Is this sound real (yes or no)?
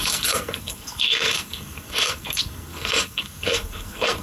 no